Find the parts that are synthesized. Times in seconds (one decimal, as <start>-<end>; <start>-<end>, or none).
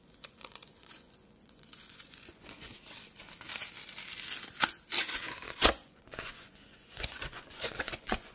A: 0.0-2.7; 5.0-8.3